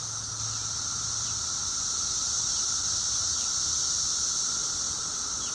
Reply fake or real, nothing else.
real